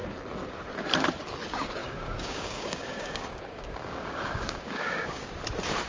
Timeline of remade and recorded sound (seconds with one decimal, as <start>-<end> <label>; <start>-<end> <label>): 0.0-1.8 recorded; 1.8-5.3 remade; 5.3-5.9 recorded